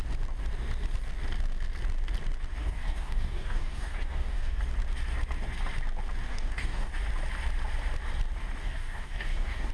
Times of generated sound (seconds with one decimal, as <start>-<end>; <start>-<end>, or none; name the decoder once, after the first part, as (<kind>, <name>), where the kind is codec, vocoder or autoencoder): 2.6-4.6 (codec, DAC); 6.3-6.9; 8.6-9.7